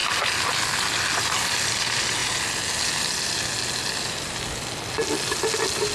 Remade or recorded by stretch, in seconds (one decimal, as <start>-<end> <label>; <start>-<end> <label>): 0.0-5.9 recorded